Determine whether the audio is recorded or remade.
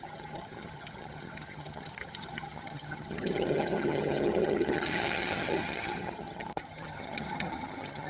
remade